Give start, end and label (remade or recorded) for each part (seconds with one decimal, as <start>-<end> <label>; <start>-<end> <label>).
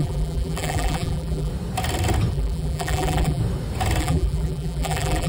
0.0-1.5 remade; 1.5-2.3 recorded; 2.3-3.4 remade; 3.4-4.0 recorded; 4.0-5.3 remade